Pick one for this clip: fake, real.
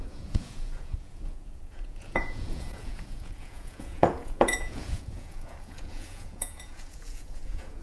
fake